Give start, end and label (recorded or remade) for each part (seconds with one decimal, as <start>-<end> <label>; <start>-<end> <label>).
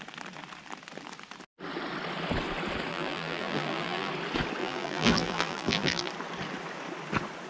0.0-2.9 recorded; 2.9-4.1 remade; 4.1-4.6 recorded; 4.6-6.1 remade; 6.1-7.5 recorded